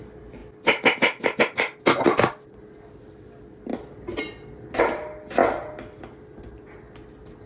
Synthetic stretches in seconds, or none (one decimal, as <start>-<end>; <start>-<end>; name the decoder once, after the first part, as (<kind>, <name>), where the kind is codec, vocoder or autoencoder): none